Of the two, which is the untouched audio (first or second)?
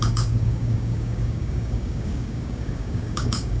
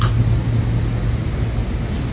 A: second